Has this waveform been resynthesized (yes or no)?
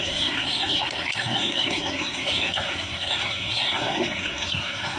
yes